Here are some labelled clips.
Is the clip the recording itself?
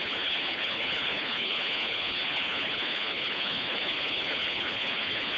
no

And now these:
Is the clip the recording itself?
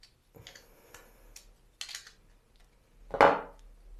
yes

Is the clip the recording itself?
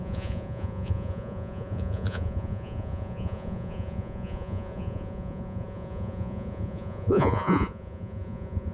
no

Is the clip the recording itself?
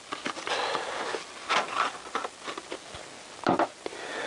yes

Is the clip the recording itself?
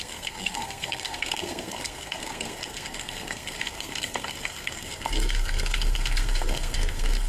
no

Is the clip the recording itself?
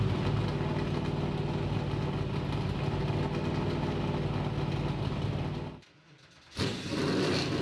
yes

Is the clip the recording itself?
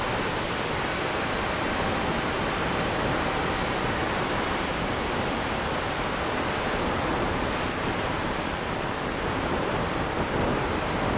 no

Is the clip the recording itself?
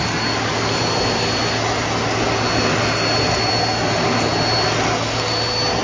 yes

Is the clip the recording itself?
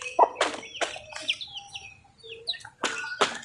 yes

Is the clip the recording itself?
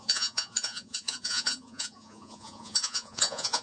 no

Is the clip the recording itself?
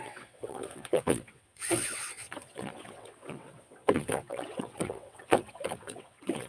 no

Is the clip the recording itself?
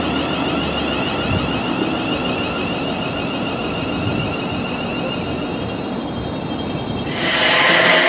yes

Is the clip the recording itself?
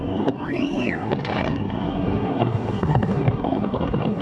no